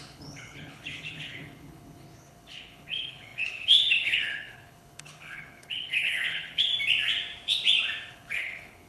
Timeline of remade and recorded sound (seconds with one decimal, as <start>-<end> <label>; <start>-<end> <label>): 0.0-6.7 remade; 6.7-8.1 recorded; 8.1-8.9 remade